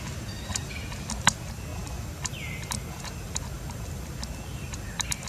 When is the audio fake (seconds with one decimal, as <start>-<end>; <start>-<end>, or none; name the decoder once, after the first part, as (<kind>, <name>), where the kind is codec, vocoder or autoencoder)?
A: none